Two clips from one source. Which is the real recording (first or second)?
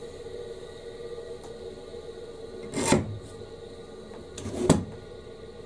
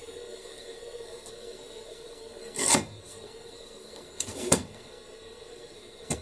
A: first